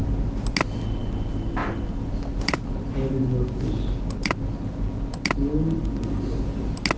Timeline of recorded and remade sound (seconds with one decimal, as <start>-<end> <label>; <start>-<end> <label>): 0.0-7.0 recorded